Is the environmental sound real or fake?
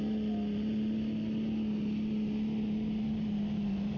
real